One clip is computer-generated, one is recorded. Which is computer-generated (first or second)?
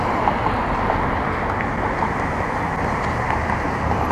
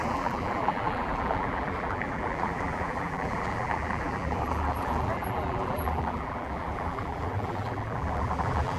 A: second